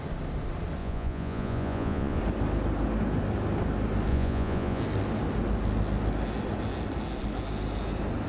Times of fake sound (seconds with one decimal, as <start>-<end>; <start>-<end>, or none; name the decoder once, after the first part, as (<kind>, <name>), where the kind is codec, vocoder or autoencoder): 0.8-2.2 (vocoder, Vocos); 4.1-4.8